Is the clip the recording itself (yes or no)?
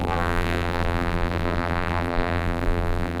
no